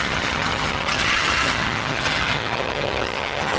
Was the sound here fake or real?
fake